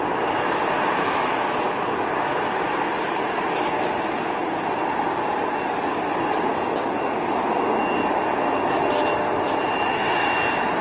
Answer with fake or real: real